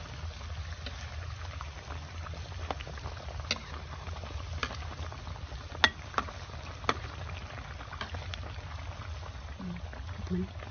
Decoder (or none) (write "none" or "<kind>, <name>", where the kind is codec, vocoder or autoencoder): none